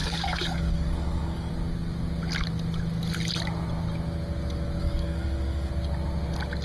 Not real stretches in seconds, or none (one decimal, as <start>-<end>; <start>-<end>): 0.0-1.5; 4.8-5.7